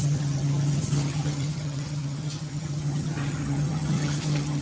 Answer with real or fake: fake